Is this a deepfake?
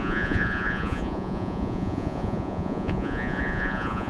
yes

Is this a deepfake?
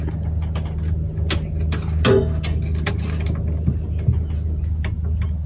no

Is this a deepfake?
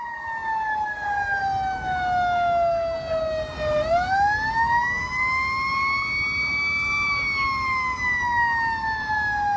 no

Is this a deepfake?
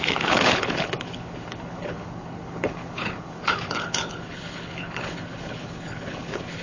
yes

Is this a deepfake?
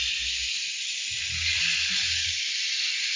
no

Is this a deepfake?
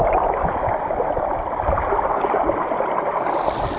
no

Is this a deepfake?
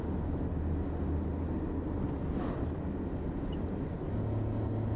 no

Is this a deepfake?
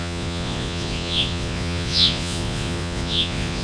yes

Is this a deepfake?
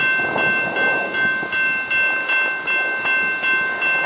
no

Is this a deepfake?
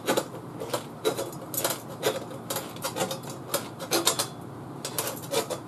no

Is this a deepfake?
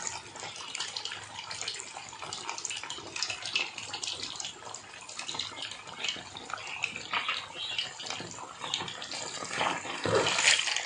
no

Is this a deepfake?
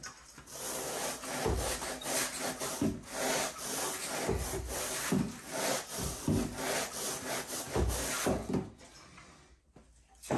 no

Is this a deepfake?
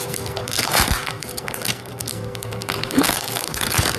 yes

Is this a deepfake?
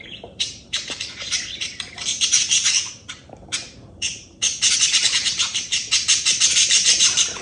yes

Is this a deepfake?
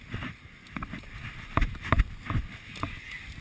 no